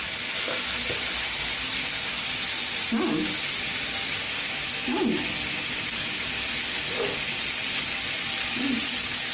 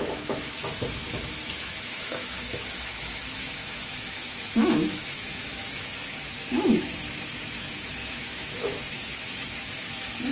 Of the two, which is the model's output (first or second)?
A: second